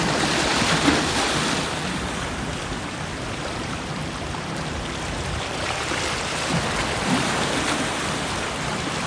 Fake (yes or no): yes